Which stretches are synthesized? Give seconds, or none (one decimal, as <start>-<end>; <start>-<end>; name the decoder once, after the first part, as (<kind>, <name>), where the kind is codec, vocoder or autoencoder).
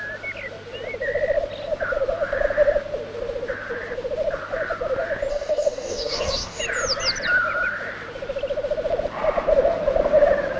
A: 5.3-6.6 (codec, DAC)